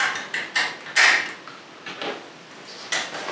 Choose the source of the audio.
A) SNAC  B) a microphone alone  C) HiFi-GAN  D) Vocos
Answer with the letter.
B